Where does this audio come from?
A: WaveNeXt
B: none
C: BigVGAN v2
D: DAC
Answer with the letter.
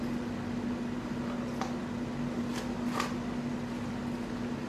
B